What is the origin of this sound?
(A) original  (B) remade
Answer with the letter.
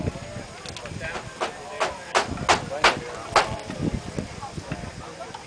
A